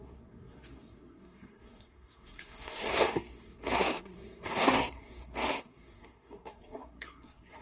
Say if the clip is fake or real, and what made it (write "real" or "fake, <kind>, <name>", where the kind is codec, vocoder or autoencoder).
fake, codec, SNAC